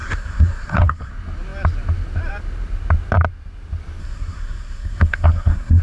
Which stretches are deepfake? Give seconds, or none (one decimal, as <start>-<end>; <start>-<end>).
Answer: 0.0-1.1; 4.0-5.8